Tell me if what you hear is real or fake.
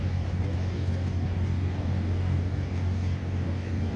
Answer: fake